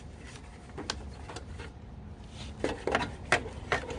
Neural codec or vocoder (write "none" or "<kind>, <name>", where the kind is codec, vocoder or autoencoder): none